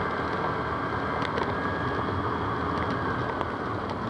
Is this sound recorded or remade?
recorded